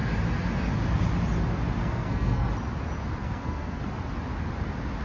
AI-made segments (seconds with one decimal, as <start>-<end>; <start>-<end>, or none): 1.8-2.5; 3.2-3.8